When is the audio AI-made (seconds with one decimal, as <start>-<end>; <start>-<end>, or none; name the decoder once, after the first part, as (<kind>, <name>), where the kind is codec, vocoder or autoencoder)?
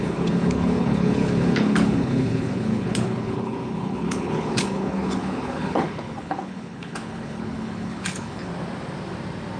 0.0-8.5 (codec, HILCodec)